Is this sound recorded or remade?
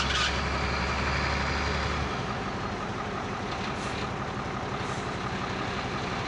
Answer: recorded